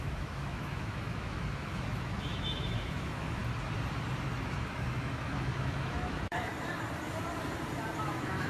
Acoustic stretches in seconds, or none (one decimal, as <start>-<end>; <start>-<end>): 3.4-4.3; 6.5-8.0